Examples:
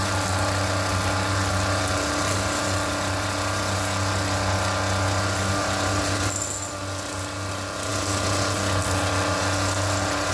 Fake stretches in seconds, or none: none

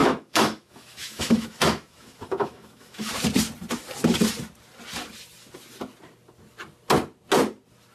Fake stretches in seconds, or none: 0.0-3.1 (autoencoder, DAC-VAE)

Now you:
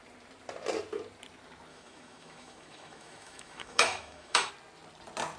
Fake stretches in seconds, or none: 1.7-4.5 (autoencoder, DAC-VAE)

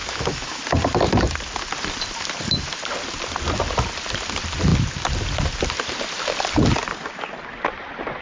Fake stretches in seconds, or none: 0.0-0.6 (autoencoder, DAC-VAE)

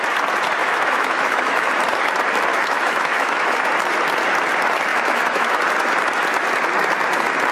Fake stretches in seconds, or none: 0.6-1.7 (autoencoder, DAC-VAE); 2.5-3.7; 4.9-5.6